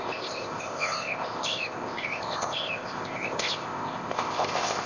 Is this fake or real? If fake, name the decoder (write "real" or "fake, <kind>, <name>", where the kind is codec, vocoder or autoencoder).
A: fake, codec, ZipCodec